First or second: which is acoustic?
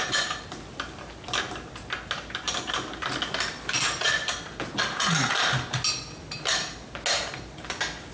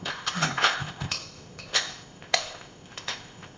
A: first